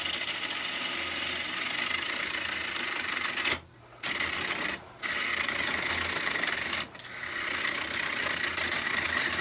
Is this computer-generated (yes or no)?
no